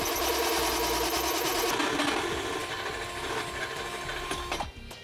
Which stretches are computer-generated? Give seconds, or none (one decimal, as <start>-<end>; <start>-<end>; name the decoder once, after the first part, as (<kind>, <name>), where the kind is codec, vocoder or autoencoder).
none